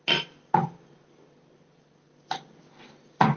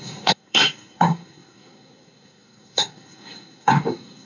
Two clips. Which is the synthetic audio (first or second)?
second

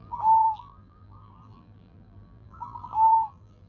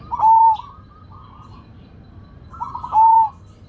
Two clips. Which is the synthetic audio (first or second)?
first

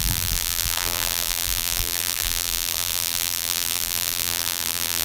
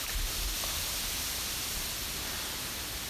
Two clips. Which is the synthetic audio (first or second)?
first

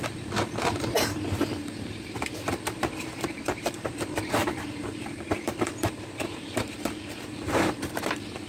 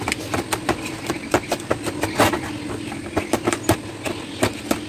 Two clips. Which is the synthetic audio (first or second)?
first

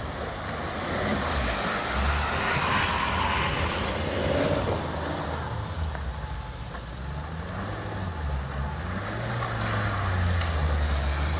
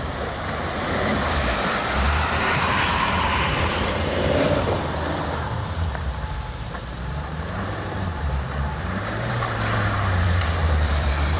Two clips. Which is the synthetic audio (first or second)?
second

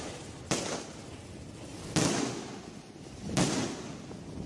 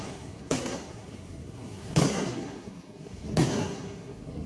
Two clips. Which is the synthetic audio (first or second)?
second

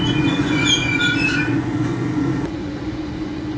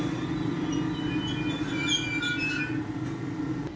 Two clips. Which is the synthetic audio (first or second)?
first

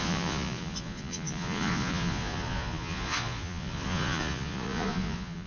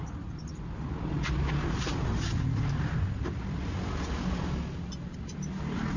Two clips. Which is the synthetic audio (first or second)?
first